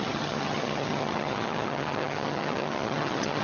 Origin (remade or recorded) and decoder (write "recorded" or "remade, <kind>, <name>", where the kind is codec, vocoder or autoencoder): remade, vocoder, HiFi-GAN